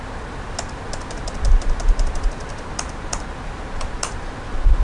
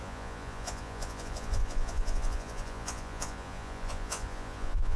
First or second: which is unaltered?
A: first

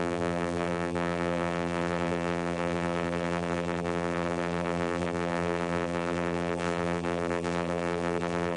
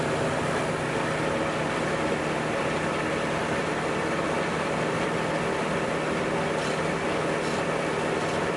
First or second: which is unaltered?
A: second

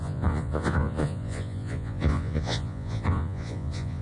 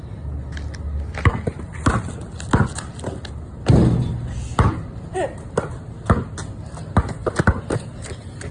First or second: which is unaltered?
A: second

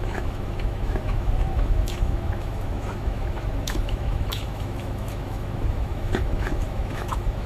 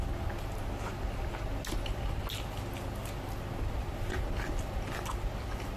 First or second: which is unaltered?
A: second